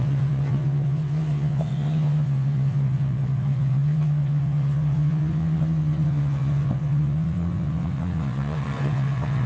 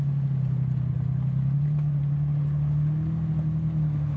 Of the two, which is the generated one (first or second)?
first